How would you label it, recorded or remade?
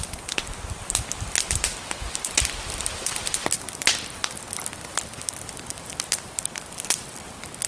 recorded